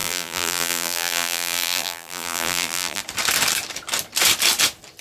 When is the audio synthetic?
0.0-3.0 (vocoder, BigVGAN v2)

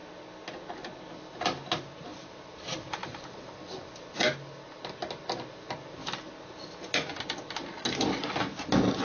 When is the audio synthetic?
2.1-3.5 (vocoder, BigVGAN v2)

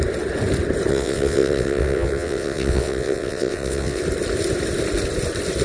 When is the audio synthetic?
0.9-4.0 (vocoder, WaveNeXt)

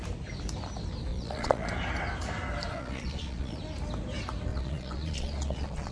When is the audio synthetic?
1.1-1.7 (vocoder, Vocos); 2.7-3.6; 4.5-5.9

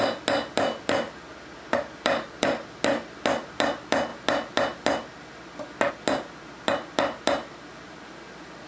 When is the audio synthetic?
1.3-2.5 (vocoder, BigVGAN v2)